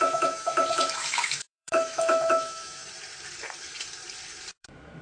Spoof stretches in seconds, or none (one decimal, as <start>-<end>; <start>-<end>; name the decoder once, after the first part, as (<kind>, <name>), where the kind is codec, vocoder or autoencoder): 0.0-2.8 (autoencoder, DAC-VAE); 4.6-5.0